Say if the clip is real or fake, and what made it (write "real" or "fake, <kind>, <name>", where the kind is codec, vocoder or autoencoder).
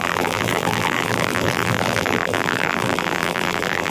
fake, vocoder, BigVGAN v2